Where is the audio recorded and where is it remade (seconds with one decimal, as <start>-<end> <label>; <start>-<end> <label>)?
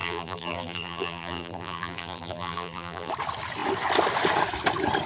0.0-3.1 remade; 3.1-5.1 recorded